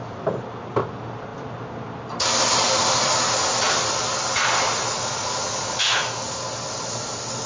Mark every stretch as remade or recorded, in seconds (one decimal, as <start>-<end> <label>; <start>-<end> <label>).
0.0-7.5 recorded